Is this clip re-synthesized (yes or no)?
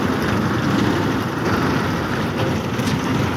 no